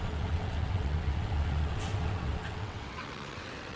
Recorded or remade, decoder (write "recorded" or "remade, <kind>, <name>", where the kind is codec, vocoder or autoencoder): remade, vocoder, WaveNeXt